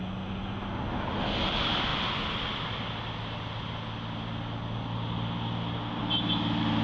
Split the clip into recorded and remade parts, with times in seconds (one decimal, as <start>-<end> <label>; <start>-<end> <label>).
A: 0.0-6.8 recorded